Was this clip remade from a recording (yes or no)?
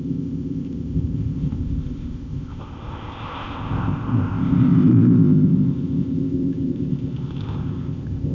yes